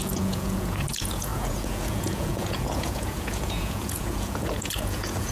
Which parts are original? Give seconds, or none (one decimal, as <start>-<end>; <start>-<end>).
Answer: none

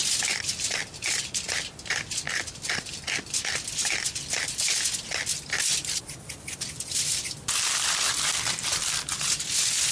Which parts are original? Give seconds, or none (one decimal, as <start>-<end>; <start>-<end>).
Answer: 0.0-9.9

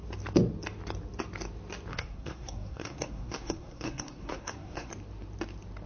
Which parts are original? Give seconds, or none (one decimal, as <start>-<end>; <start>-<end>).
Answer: 0.0-1.9; 4.9-5.9